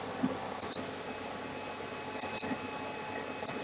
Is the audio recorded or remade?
recorded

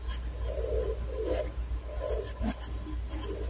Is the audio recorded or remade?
recorded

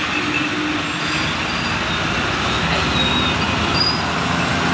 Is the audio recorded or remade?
recorded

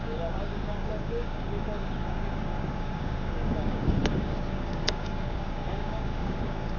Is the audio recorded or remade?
remade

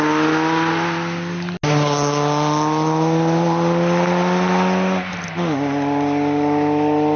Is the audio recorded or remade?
recorded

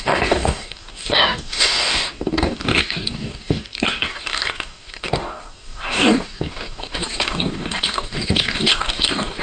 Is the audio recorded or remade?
remade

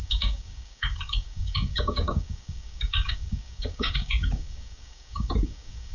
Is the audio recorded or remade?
remade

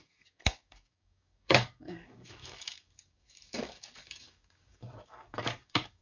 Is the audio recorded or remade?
remade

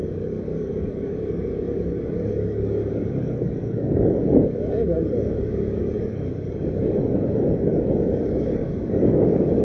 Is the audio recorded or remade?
remade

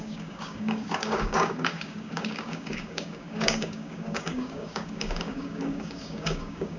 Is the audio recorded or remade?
remade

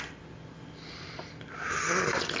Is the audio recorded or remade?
recorded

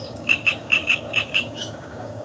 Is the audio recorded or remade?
remade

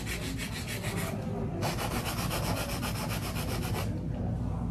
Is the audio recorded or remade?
recorded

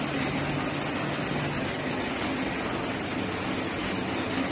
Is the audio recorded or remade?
recorded